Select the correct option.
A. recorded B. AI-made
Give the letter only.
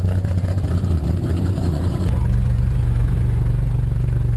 B